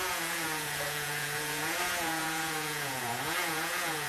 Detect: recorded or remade remade